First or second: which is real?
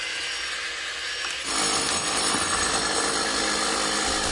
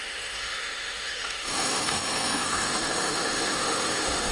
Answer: first